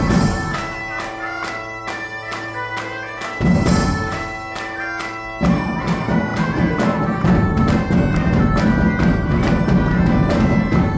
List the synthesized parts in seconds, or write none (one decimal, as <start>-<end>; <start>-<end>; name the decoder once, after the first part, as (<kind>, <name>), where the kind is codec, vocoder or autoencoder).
none